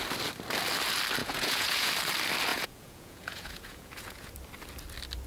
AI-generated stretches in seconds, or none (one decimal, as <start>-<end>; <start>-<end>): 1.2-1.9; 2.5-4.3